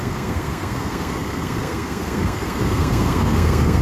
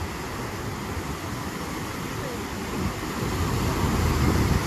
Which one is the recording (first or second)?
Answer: second